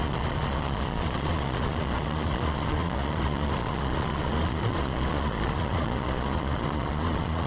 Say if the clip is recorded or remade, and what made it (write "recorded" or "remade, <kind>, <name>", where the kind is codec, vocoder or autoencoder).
remade, vocoder, Vocos